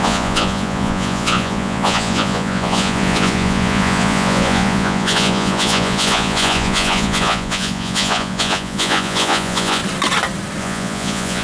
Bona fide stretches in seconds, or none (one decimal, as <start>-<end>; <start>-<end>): 9.8-10.6